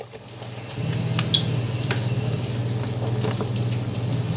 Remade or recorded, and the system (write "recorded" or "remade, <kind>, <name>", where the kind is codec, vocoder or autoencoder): recorded